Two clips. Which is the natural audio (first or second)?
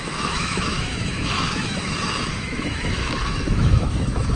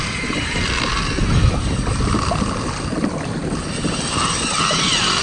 second